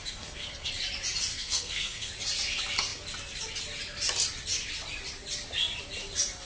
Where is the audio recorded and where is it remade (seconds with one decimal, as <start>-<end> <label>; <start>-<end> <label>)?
0.0-0.7 remade; 0.7-1.3 recorded; 1.3-2.1 remade; 2.1-6.5 recorded